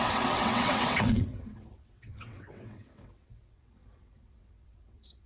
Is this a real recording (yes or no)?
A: no